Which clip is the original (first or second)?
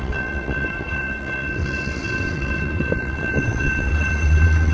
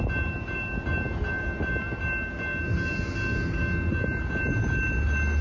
second